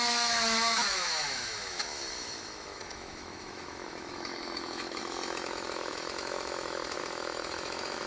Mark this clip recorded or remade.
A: remade